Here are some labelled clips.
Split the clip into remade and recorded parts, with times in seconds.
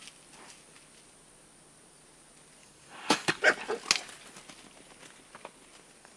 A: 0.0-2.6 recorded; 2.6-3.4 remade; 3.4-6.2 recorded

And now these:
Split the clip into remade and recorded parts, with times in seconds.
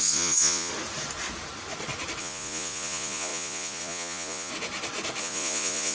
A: 0.0-0.7 remade; 0.7-2.2 recorded; 2.2-4.5 remade; 4.5-5.2 recorded; 5.2-5.9 remade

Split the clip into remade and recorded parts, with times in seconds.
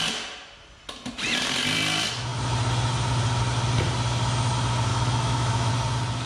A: 0.0-4.9 recorded; 4.9-5.7 remade; 5.7-6.3 recorded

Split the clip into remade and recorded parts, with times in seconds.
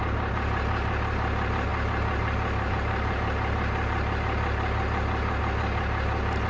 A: 0.0-6.5 remade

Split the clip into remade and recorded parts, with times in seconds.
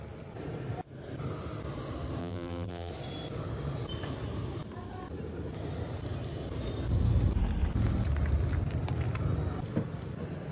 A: 0.0-2.2 recorded; 2.2-2.9 remade; 2.9-10.5 recorded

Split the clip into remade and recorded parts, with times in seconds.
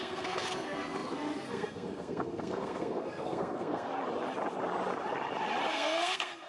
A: 0.0-3.9 remade; 3.9-5.7 recorded; 5.7-6.5 remade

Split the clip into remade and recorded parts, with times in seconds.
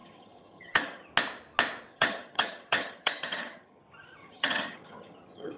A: 0.0-1.1 remade; 1.1-1.9 recorded; 1.9-3.8 remade; 3.8-4.2 recorded; 4.2-5.6 remade